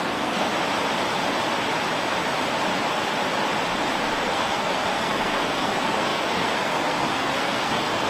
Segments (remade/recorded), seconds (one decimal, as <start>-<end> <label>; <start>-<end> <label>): 0.0-0.5 remade; 0.5-4.1 recorded; 4.1-8.1 remade